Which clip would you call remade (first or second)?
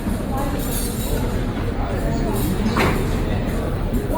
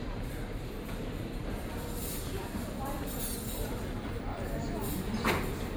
second